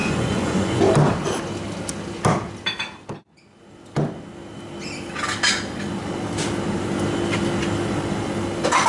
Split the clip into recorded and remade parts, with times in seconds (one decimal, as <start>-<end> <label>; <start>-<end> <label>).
0.0-0.8 remade; 0.8-8.9 recorded